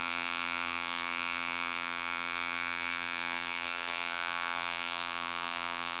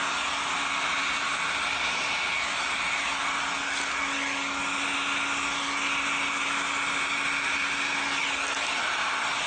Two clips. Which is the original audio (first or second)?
second